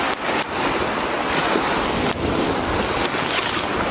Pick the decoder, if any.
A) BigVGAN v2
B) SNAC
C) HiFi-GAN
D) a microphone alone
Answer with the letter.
D